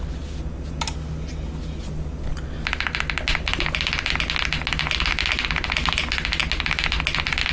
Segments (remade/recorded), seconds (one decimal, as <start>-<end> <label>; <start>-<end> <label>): 0.0-7.5 recorded